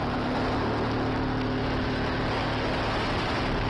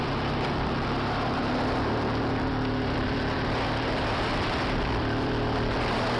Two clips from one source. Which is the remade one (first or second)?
second